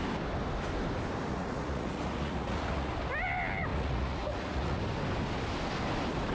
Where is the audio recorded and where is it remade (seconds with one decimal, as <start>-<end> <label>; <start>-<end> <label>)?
0.0-1.3 recorded; 1.3-2.9 remade; 2.9-3.7 recorded; 3.7-4.8 remade; 4.8-6.3 recorded